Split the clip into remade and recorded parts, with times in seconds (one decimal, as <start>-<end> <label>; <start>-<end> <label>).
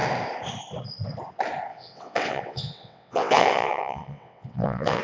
0.0-1.7 recorded; 1.7-5.0 remade